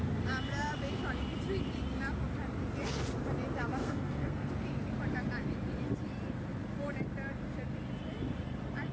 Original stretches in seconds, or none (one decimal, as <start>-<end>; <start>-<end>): 0.0-3.8; 4.5-8.9